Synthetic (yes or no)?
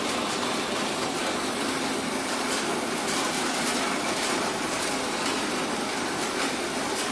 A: yes